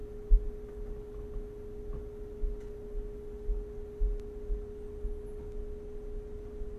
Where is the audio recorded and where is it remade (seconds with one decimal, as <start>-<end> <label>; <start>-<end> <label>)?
0.0-6.8 recorded